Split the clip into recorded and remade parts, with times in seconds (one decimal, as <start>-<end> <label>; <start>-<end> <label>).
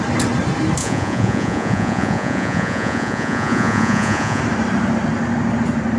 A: 0.0-0.8 recorded; 0.8-4.4 remade; 4.4-6.0 recorded